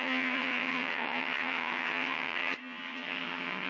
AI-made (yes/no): yes